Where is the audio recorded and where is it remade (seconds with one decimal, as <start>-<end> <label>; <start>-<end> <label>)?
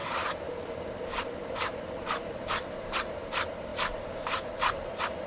0.0-3.2 remade; 3.2-3.7 recorded; 3.7-4.8 remade; 4.8-5.3 recorded